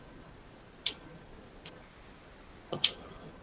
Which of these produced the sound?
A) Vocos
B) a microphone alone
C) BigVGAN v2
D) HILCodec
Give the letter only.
B